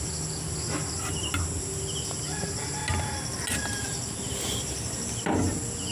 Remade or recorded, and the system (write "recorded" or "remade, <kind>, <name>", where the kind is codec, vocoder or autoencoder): recorded